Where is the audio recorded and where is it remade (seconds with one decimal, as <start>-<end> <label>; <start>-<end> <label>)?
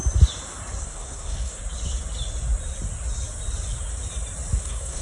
0.0-0.8 recorded; 0.8-1.6 remade; 1.6-4.6 recorded; 4.6-5.0 remade